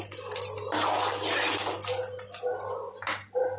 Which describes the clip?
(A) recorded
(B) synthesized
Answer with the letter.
A